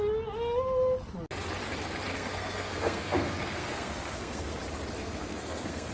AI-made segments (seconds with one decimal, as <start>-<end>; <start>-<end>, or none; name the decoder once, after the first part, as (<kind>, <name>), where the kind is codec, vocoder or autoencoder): 2.1-4.6 (codec, SNAC); 5.0-5.9